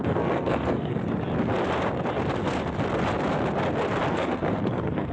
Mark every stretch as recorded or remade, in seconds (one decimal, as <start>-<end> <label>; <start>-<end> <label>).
0.0-1.0 remade; 1.0-4.1 recorded; 4.1-5.1 remade